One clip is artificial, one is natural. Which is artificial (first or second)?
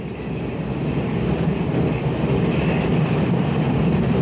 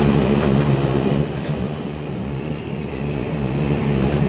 second